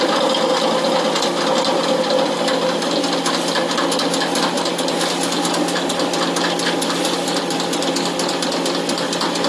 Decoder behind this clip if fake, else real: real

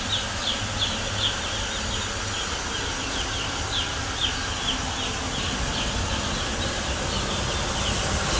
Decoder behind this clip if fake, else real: real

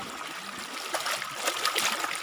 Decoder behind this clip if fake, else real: real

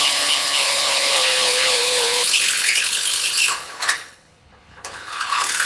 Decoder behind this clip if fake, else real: fake, codec, HILCodec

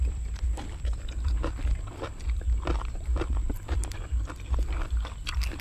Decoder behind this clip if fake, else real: fake, vocoder, BigVGAN v2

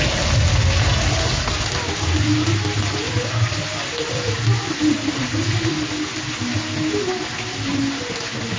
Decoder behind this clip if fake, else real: real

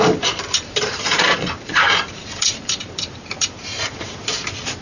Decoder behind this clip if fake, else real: fake, vocoder, BigVGAN v2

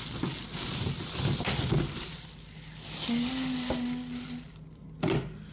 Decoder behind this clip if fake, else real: real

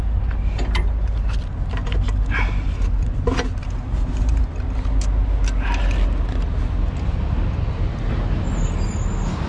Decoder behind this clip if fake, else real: real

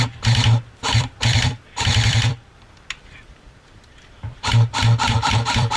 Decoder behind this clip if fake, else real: fake, vocoder, BigVGAN v2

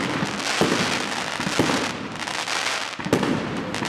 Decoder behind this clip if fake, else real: real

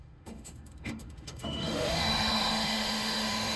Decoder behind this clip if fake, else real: fake, autoencoder, DAC-VAE